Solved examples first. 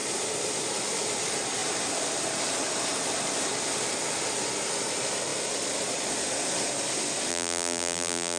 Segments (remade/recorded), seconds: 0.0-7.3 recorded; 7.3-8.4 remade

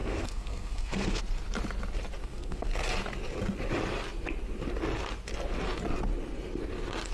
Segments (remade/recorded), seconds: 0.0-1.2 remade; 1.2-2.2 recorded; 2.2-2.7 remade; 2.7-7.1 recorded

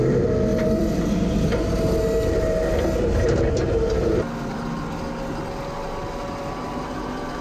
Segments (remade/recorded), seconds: 0.0-0.5 recorded; 0.5-1.3 remade; 1.3-7.4 recorded

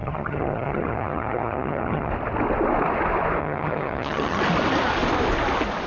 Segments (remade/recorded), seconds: 0.0-2.1 remade; 2.1-3.4 recorded; 3.4-4.4 remade; 4.4-5.9 recorded

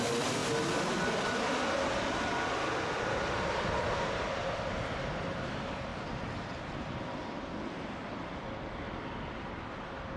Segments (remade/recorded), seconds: 0.0-10.2 recorded

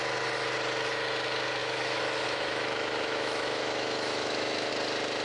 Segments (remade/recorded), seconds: 0.0-1.6 recorded; 1.6-4.7 remade; 4.7-5.2 recorded

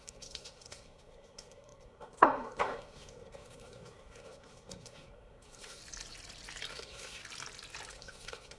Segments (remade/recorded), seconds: 0.0-5.8 remade; 5.8-6.7 recorded; 6.7-7.2 remade; 7.2-7.9 recorded; 7.9-8.6 remade

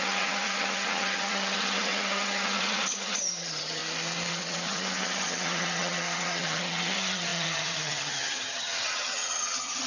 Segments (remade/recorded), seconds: 0.0-3.8 remade; 3.8-4.3 recorded; 4.3-9.9 remade